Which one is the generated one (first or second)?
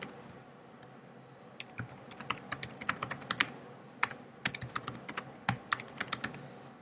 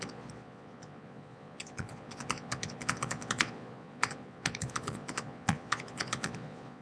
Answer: second